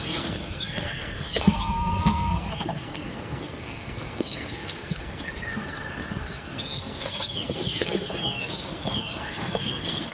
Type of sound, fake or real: fake